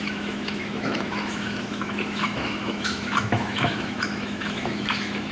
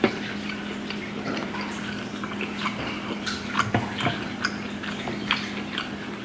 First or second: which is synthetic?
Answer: first